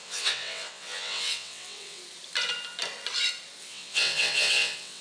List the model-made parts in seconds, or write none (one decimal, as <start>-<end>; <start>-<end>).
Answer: 0.0-2.0; 3.6-5.0